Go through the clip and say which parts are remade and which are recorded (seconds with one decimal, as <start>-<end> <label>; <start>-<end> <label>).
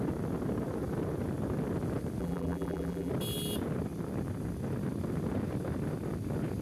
0.0-2.2 recorded; 2.2-3.1 remade; 3.1-6.6 recorded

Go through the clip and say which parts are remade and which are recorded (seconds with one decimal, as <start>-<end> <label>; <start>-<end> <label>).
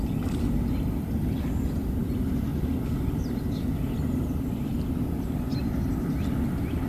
0.0-6.9 recorded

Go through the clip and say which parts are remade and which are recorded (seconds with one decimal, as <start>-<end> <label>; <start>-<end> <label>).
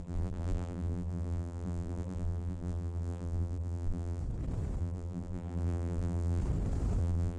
0.0-4.2 remade; 4.2-4.8 recorded; 4.8-6.4 remade; 6.4-7.0 recorded; 7.0-7.4 remade